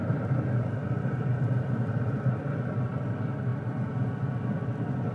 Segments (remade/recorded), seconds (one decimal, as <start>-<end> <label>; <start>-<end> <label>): 0.0-5.1 recorded